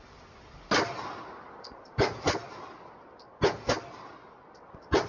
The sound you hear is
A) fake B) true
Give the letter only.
B